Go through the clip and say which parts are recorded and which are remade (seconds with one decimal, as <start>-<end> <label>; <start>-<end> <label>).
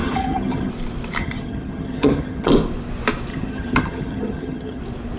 0.0-0.7 remade; 0.7-1.2 recorded; 1.2-2.5 remade; 2.5-3.3 recorded; 3.3-4.8 remade; 4.8-5.2 recorded